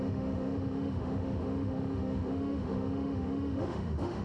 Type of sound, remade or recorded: remade